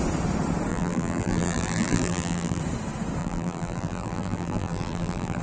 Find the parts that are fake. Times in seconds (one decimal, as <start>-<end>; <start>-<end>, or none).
0.7-2.6; 3.2-5.4